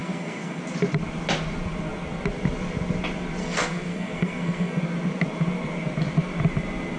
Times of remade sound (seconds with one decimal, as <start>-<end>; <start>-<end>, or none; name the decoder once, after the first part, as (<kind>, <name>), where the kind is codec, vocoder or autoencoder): 0.0-0.6 (codec, SNAC); 3.4-4.8